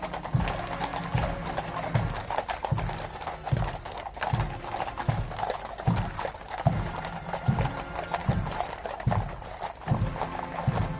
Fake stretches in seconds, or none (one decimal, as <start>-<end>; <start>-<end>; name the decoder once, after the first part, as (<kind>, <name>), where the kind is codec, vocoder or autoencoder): 8.2-8.7 (vocoder, BigVGAN v2)